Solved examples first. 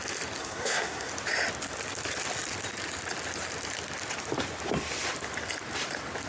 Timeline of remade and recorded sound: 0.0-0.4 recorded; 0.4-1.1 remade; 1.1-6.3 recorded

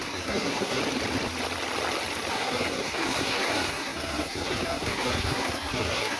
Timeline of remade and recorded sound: 0.0-0.8 remade; 0.8-2.3 recorded; 2.3-6.2 remade

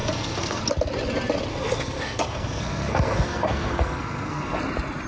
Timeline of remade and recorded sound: 0.0-0.6 remade; 0.6-1.5 recorded; 1.5-4.6 remade; 4.6-5.1 recorded

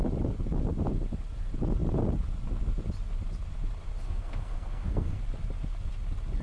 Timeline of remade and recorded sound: 0.0-4.0 recorded; 4.0-5.2 remade; 5.2-6.4 recorded

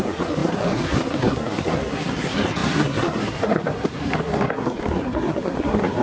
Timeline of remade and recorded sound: 0.0-6.0 remade

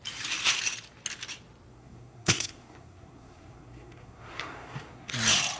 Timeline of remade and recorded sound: 0.0-1.7 recorded; 1.7-5.1 remade; 5.1-5.6 recorded

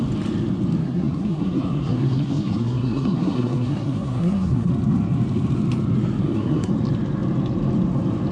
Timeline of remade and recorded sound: 0.0-0.8 recorded; 0.8-4.7 remade; 4.7-6.2 recorded; 6.2-6.7 remade; 6.7-8.3 recorded